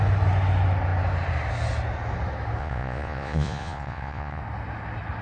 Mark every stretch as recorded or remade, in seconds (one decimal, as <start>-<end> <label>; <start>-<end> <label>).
0.0-2.6 recorded; 2.6-4.4 remade; 4.4-5.2 recorded